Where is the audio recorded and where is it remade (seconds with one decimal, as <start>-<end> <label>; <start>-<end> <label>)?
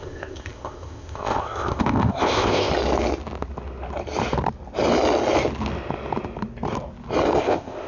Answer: 0.0-2.7 remade; 2.7-7.4 recorded; 7.4-7.9 remade